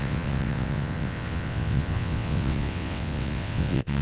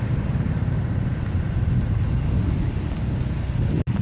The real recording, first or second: second